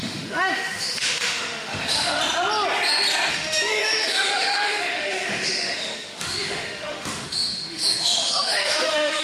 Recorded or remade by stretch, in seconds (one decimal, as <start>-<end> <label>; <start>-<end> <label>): 0.0-2.2 remade; 2.2-3.3 recorded; 3.3-9.2 remade